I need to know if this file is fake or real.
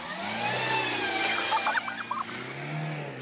real